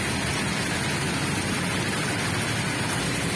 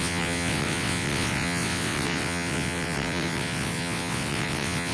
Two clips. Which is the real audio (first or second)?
first